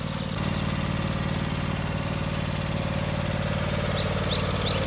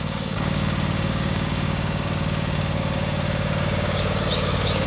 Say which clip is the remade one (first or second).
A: second